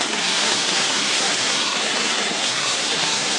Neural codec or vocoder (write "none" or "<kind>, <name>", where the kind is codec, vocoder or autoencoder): codec, SNAC